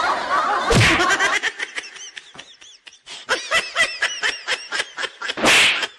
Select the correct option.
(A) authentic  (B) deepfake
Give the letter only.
A